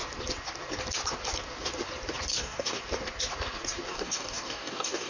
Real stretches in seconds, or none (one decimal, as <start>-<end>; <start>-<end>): 0.0-2.3; 2.8-3.9